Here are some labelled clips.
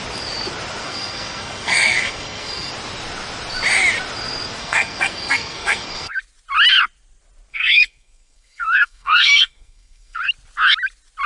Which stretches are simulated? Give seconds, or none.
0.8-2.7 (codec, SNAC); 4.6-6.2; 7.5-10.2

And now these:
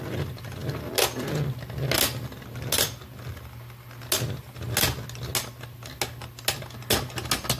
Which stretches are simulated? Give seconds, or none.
none